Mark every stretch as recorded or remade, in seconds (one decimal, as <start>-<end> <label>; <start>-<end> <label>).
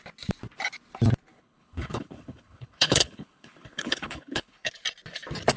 0.0-1.3 recorded; 1.3-4.7 remade; 4.7-5.6 recorded